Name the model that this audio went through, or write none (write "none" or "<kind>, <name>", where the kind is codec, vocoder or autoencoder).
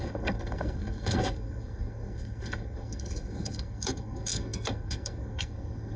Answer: codec, SNAC